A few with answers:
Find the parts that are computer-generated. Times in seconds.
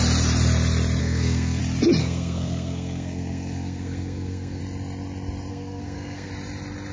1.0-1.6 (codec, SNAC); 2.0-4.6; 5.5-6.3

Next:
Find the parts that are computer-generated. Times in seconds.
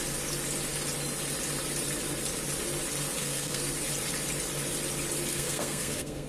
3.2-3.7 (codec, SNAC); 5.3-6.3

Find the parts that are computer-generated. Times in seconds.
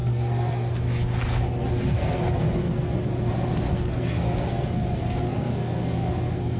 0.0-1.0 (codec, SNAC); 1.6-3.3; 3.7-6.6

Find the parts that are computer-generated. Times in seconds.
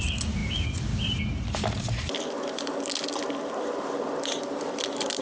none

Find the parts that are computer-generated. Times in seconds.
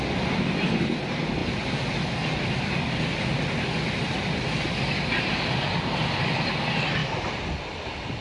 none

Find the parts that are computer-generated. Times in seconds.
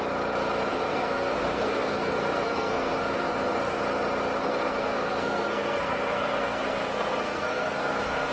0.7-3.8 (codec, SNAC); 4.4-8.3